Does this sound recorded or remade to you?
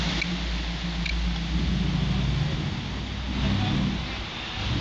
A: recorded